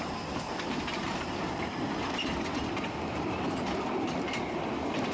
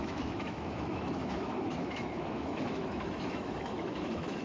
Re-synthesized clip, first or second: second